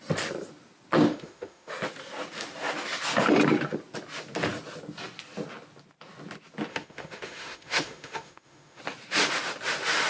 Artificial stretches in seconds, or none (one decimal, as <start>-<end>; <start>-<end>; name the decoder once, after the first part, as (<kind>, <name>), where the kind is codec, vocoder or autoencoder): 1.1-1.7 (autoencoder, DAC-VAE); 6.7-8.8